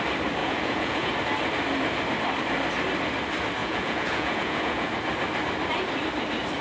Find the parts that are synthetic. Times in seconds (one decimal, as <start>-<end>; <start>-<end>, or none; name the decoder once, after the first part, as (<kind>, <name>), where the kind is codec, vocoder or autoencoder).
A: 0.4-1.1 (vocoder, Vocos); 3.6-4.9